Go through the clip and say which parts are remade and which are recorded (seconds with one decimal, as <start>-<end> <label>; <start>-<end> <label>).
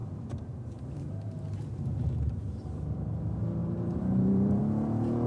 0.0-3.2 remade; 3.2-3.6 recorded; 3.6-4.6 remade; 4.6-5.3 recorded